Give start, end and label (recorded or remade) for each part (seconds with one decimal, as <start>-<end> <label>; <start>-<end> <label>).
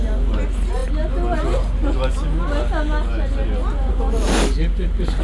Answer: 0.0-5.2 recorded